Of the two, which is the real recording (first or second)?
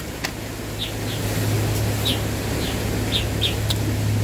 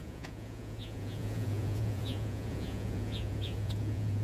first